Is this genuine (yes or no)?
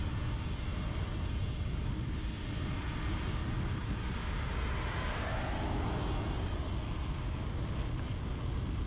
yes